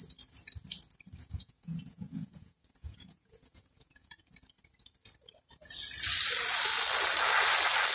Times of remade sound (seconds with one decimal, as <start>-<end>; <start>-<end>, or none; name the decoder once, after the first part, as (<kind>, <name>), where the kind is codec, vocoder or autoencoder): 1.2-4.3 (vocoder, Vocos)